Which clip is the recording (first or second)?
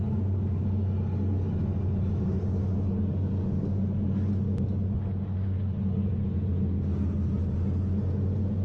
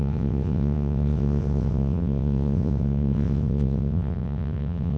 first